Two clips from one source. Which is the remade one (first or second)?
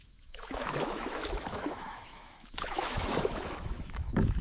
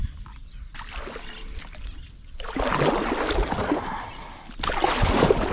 first